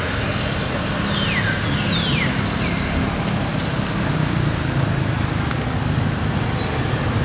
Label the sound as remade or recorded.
recorded